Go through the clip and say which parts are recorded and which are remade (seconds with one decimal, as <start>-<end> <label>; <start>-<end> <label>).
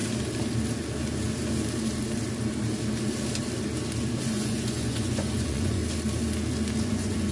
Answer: 0.0-4.2 recorded; 4.2-5.8 remade; 5.8-6.8 recorded; 6.8-7.3 remade